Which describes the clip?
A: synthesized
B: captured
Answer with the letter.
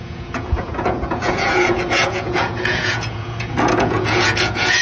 A